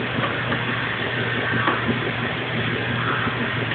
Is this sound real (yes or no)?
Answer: no